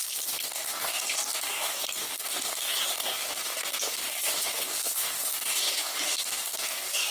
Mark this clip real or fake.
fake